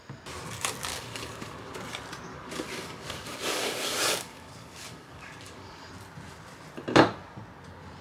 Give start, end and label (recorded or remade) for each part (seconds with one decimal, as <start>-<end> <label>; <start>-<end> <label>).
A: 0.0-0.9 recorded; 0.9-1.7 remade; 1.7-2.3 recorded; 2.3-5.9 remade; 5.9-8.0 recorded